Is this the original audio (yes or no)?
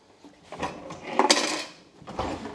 yes